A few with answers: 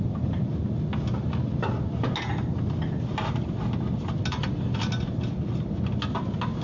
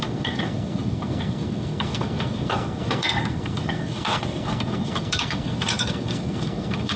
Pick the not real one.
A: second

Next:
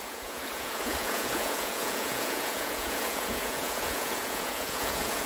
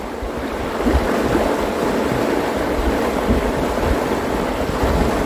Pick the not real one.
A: first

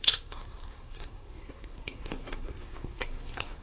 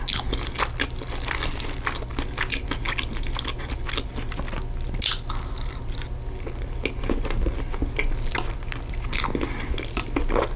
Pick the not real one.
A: first